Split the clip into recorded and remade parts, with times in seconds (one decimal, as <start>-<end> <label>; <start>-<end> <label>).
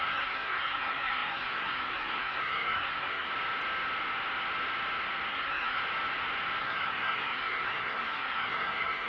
0.0-3.3 remade; 3.3-5.3 recorded; 5.3-5.8 remade; 5.8-6.6 recorded; 6.6-9.1 remade